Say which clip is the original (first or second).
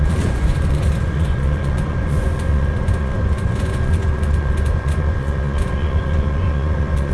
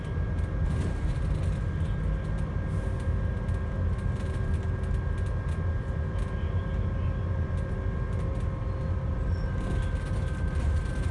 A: second